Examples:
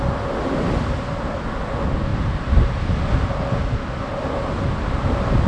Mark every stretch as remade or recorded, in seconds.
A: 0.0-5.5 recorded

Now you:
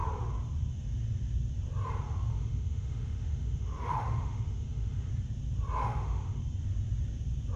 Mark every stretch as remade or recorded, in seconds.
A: 0.0-2.3 recorded; 2.3-5.1 remade; 5.1-5.8 recorded; 5.8-6.4 remade; 6.4-7.6 recorded

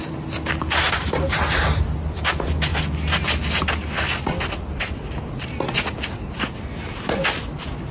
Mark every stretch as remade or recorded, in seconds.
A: 0.0-7.9 recorded

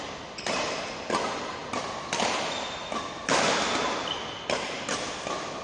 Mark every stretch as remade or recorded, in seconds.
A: 0.0-5.6 recorded

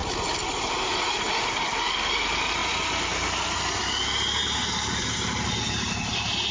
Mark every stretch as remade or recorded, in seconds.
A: 0.0-6.5 recorded

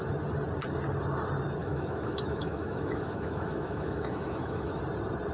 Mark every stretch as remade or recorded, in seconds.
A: 0.0-1.6 recorded; 1.6-4.8 remade; 4.8-5.3 recorded